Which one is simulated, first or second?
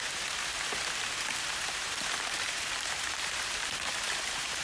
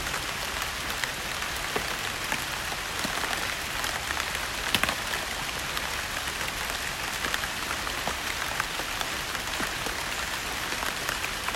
first